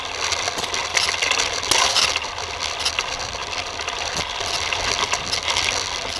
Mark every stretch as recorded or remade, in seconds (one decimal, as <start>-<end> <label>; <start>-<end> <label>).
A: 0.0-6.2 recorded